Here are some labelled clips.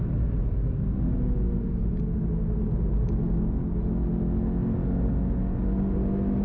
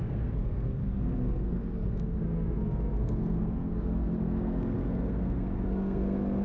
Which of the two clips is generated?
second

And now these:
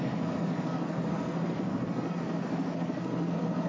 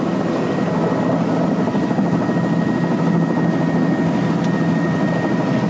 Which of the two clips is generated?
first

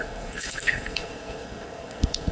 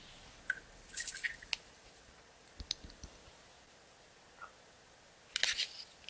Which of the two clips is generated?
first